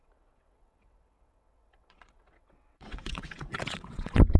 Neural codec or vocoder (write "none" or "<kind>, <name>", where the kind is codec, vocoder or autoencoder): vocoder, WaveNeXt